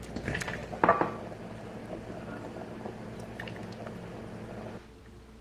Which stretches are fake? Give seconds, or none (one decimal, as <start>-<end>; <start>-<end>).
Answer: none